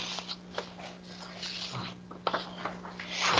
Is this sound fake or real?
real